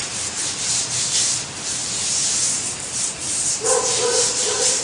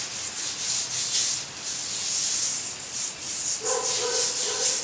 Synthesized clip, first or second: first